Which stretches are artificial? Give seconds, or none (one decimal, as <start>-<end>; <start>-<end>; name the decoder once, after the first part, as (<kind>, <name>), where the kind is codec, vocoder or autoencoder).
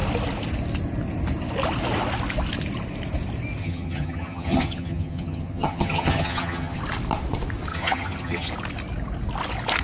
3.6-6.8 (vocoder, HiFi-GAN); 7.7-8.5